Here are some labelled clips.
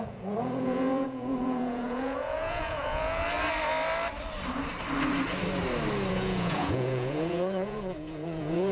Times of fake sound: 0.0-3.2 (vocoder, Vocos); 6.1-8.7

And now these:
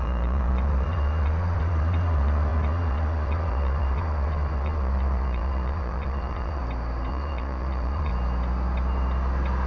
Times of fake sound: 0.0-6.6 (vocoder, Vocos); 7.1-8.1

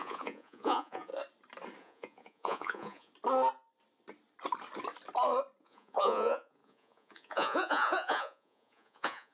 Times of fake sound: 0.0-1.1 (vocoder, Vocos); 1.8-3.1; 5.6-9.3

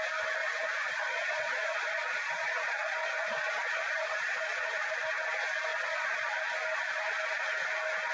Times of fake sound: 0.4-4.9 (vocoder, Vocos); 5.7-6.3

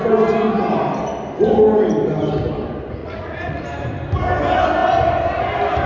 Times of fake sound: 3.0-3.6 (vocoder, Vocos)

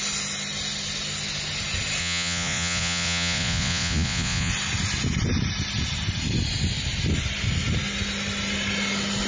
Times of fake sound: 2.0-4.5 (vocoder, Vocos)

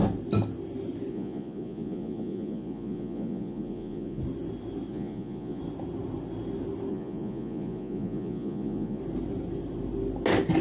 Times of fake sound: 1.1-4.2 (vocoder, Vocos); 4.9-5.6; 6.9-9.0